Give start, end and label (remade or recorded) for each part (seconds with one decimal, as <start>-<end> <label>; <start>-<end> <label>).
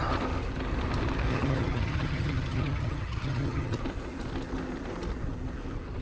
0.0-1.3 recorded; 1.3-3.8 remade; 3.8-6.0 recorded